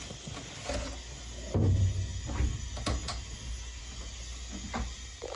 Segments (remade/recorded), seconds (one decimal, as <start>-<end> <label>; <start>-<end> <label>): 0.0-5.4 recorded